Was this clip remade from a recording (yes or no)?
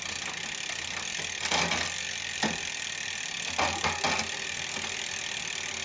no